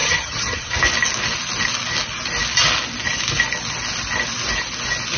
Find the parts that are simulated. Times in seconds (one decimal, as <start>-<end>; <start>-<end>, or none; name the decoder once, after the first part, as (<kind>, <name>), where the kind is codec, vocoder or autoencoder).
0.0-0.7 (vocoder, HiFi-GAN)